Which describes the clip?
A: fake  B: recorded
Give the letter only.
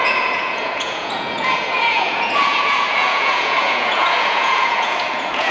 A